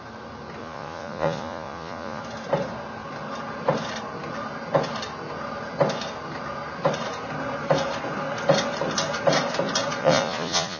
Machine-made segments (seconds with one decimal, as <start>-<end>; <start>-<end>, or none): 0.6-2.2; 10.0-10.8